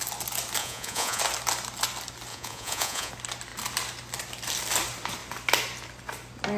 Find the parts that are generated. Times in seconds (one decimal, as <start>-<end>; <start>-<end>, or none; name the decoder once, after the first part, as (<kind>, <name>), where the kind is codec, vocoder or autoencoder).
0.6-1.2 (vocoder, Vocos); 2.3-3.1